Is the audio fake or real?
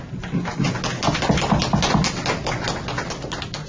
real